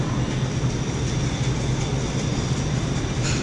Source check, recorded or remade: recorded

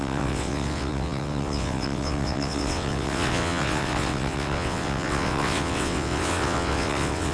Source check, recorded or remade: remade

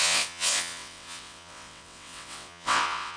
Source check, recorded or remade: remade